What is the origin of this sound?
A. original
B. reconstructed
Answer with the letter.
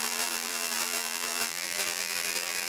B